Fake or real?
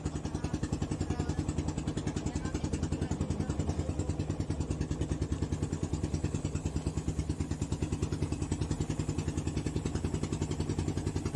real